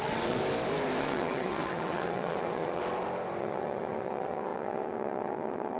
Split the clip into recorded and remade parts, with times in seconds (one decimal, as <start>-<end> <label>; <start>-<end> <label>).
0.0-0.4 remade; 0.4-1.0 recorded; 1.0-2.8 remade; 2.8-3.4 recorded; 3.4-5.8 remade